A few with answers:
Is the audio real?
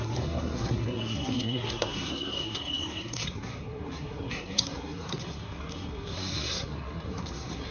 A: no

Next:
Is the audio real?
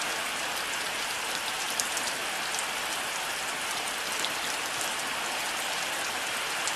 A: yes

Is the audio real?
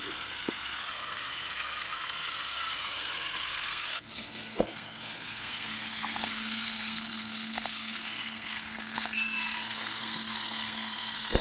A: no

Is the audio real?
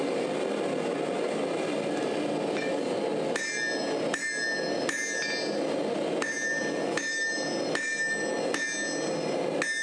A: yes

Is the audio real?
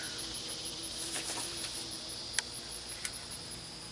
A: yes